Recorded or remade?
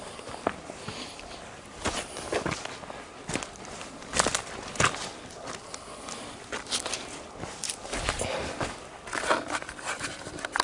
recorded